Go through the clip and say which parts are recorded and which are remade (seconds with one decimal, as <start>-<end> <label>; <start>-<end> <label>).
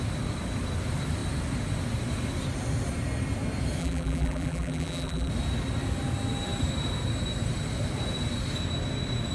0.0-3.8 recorded; 3.8-5.3 remade; 5.3-9.3 recorded